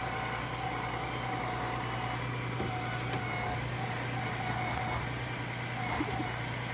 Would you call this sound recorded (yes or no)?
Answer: yes